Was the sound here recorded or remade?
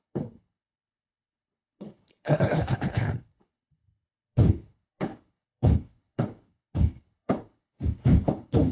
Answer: remade